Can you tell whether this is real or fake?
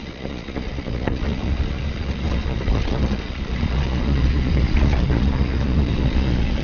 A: fake